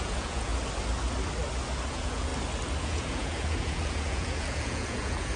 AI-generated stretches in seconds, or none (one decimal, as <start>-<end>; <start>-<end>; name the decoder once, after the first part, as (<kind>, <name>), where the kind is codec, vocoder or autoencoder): 0.0-0.5 (vocoder, Vocos); 1.9-2.3; 2.8-5.4